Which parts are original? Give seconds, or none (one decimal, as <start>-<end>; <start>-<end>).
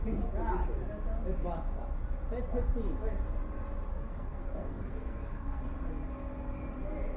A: 0.0-3.9; 5.6-7.2